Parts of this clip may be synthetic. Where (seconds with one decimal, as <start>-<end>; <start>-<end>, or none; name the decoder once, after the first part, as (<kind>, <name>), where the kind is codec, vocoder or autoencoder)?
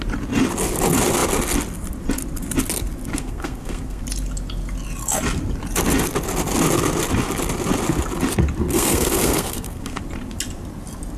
3.1-4.0 (codec, SNAC); 8.7-10.0